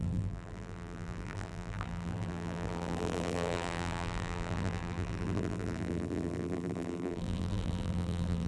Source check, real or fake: fake